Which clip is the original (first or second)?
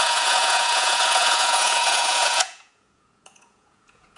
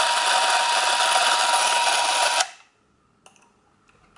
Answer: second